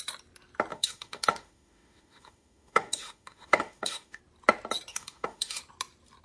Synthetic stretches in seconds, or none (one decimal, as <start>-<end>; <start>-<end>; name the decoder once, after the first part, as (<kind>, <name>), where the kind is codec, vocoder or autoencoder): 0.7-4.2 (autoencoder, DAC-VAE); 4.9-5.6